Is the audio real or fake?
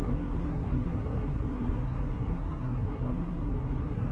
fake